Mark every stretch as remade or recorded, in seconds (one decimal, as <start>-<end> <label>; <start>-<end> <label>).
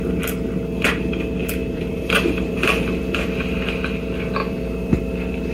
0.0-1.6 recorded; 1.6-3.7 remade; 3.7-4.4 recorded; 4.4-5.0 remade; 5.0-5.5 recorded